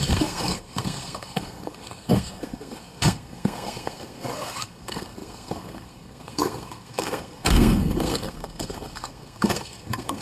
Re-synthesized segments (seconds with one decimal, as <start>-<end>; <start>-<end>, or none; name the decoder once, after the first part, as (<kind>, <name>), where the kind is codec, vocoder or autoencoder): 0.0-10.2 (codec, SNAC)